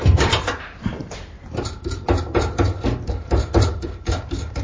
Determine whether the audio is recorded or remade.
remade